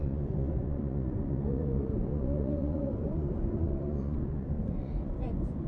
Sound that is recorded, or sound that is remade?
remade